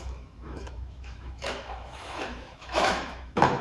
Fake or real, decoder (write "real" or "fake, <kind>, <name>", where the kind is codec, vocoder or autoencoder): fake, autoencoder, DAC-VAE